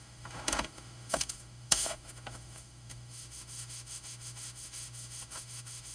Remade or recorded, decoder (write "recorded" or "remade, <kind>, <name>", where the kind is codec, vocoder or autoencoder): remade, autoencoder, DAC-VAE